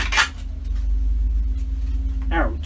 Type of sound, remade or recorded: recorded